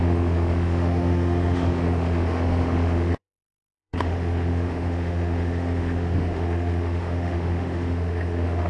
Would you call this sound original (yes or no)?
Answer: no